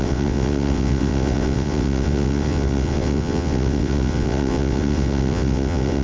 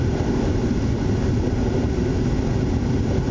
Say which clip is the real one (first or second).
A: second